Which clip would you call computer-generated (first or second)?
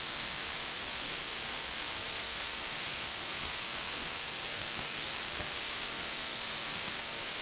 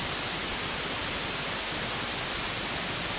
first